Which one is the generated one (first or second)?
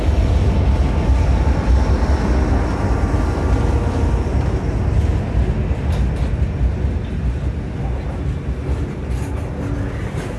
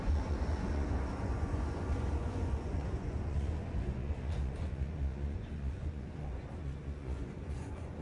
second